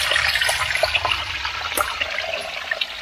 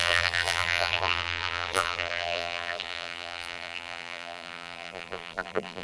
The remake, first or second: second